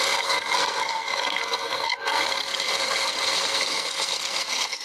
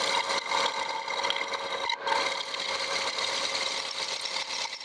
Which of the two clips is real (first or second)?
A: second